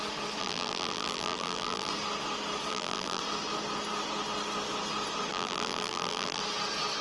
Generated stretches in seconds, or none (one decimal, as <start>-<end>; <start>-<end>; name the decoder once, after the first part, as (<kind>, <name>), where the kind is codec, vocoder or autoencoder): 0.4-1.9 (vocoder, BigVGAN v2); 2.7-3.2; 5.3-6.4